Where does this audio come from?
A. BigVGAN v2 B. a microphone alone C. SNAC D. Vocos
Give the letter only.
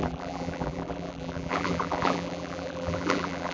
A